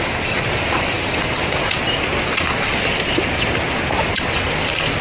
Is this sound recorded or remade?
recorded